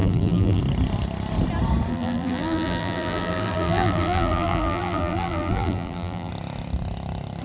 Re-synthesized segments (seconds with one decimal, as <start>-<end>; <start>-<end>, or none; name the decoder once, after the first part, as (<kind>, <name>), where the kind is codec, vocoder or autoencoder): 0.0-0.6 (vocoder, BigVGAN v2); 1.9-6.3